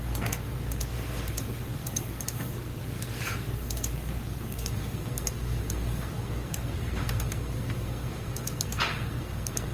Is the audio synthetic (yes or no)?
yes